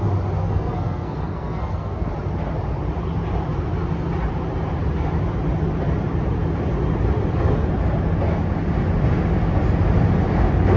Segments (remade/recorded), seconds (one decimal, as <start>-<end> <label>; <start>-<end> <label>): 0.0-0.4 recorded; 0.4-2.1 remade; 2.1-10.8 recorded

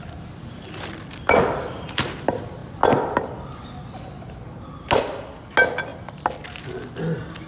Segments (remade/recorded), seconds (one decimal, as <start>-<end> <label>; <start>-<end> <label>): 0.0-7.5 recorded

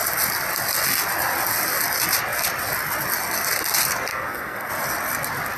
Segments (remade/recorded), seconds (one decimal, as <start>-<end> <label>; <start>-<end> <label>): 0.0-4.1 recorded; 4.1-4.7 remade; 4.7-5.6 recorded

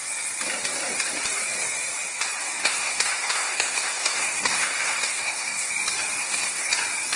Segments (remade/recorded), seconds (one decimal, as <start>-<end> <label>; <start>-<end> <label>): 0.0-2.6 recorded; 2.6-5.7 remade; 5.7-6.2 recorded; 6.2-6.7 remade; 6.7-7.2 recorded

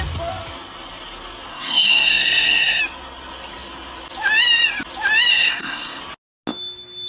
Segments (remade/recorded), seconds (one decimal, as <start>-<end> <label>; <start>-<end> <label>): 0.0-1.5 recorded; 1.5-2.8 remade; 2.8-5.3 recorded; 5.3-6.0 remade; 6.0-7.1 recorded

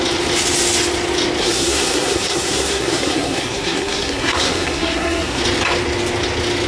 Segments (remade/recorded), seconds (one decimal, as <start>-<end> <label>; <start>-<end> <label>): 0.0-1.4 recorded; 1.4-5.4 remade; 5.4-6.7 recorded

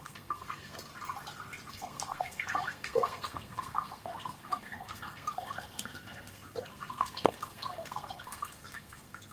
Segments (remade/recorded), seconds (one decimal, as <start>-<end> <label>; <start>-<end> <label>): 0.0-0.9 remade; 0.9-1.7 recorded; 1.7-9.3 remade

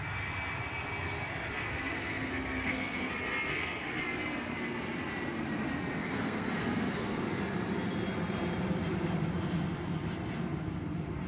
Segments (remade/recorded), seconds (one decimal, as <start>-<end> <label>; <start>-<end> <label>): 0.0-1.6 recorded; 1.6-3.1 remade; 3.1-3.5 recorded; 3.5-4.0 remade; 4.0-6.0 recorded; 6.0-7.4 remade; 7.4-11.3 recorded